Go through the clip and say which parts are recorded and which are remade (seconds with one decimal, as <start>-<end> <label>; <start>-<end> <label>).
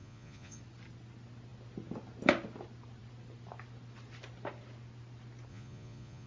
0.0-0.6 remade; 0.6-5.5 recorded; 5.5-6.3 remade